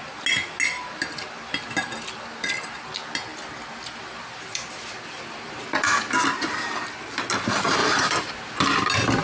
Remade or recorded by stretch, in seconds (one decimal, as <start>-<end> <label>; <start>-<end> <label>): 0.0-3.3 recorded; 3.3-7.2 remade; 7.2-7.8 recorded; 7.8-8.6 remade; 8.6-9.2 recorded